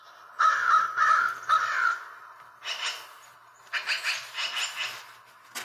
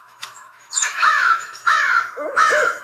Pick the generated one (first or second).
second